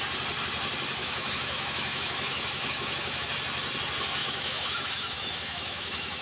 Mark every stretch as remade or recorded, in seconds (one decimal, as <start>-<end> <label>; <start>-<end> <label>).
0.0-1.0 recorded; 1.0-3.3 remade; 3.3-4.2 recorded; 4.2-6.2 remade